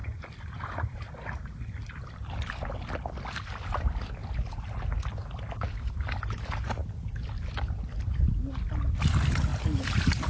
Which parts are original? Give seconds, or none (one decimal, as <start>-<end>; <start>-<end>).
2.9-6.8; 7.6-10.3

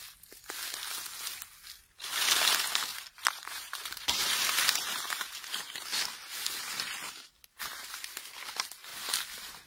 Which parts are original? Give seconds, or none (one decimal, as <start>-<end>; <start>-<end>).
0.0-2.9; 5.4-7.7; 8.2-9.7

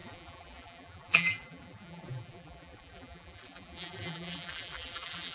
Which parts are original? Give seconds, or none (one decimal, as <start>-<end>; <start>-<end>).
none

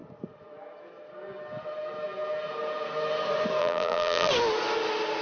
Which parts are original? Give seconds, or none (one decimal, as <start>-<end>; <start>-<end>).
0.0-3.6; 4.3-5.2